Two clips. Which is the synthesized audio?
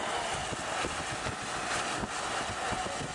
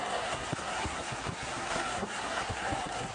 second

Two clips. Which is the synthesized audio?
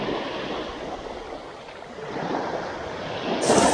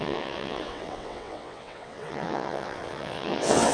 second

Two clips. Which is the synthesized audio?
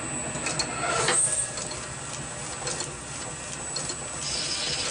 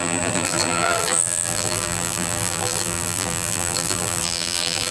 second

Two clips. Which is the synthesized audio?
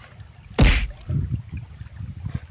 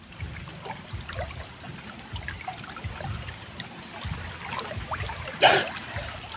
first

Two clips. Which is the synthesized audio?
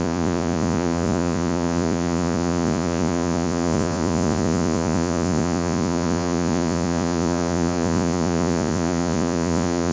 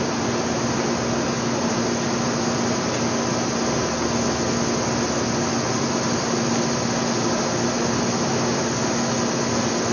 first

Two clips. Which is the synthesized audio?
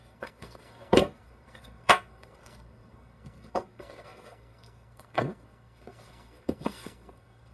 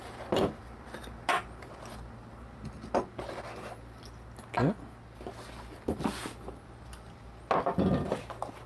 first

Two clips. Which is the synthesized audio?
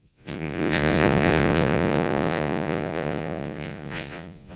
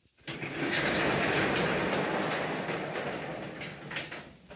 first